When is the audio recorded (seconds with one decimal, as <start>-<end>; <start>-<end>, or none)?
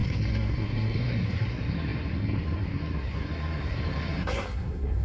none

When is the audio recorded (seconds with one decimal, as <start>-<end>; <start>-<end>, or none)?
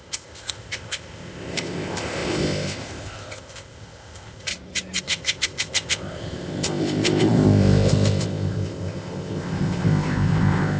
4.5-5.0